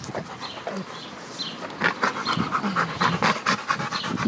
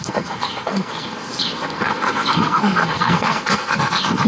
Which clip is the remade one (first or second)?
second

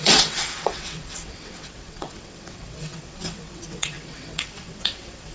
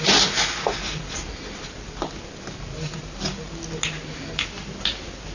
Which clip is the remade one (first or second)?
first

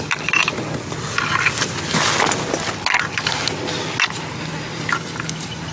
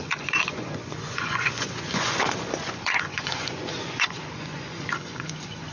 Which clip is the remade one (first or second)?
second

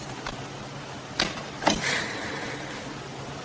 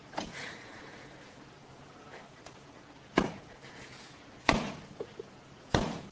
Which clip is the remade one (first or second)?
second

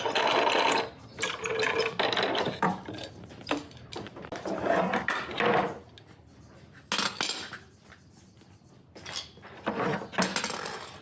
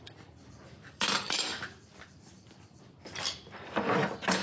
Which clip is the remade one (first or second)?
second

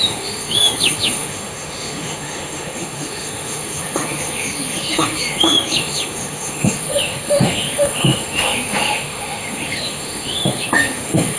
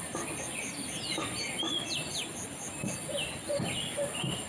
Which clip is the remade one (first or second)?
first